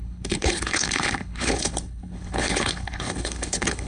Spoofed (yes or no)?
yes